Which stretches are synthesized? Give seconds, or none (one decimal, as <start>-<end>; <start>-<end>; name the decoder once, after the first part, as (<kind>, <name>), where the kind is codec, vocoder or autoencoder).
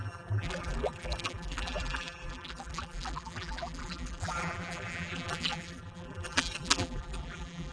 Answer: 0.0-7.7 (vocoder, BigVGAN v2)